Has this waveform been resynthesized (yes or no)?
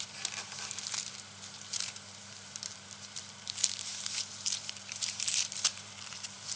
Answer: yes